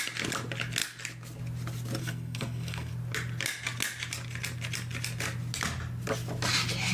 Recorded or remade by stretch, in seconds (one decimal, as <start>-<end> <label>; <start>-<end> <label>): 0.0-2.0 recorded; 2.0-2.9 remade; 2.9-6.9 recorded